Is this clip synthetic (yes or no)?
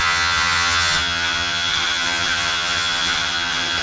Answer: yes